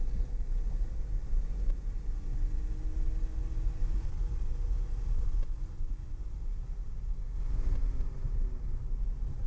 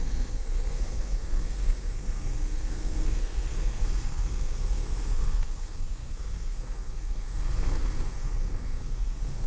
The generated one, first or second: second